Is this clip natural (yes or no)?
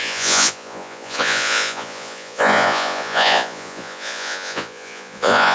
no